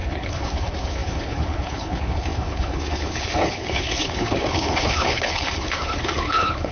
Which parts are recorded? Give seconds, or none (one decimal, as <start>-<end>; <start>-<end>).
none